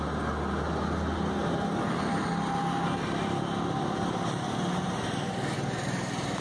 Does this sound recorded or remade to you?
recorded